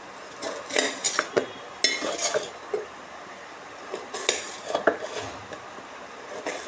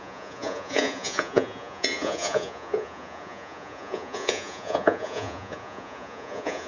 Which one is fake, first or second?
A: second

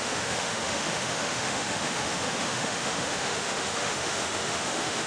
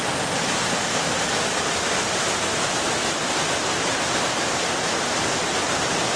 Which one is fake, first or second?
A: first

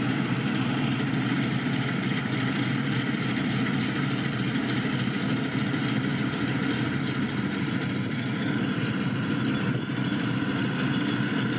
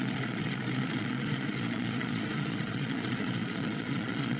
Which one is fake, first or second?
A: second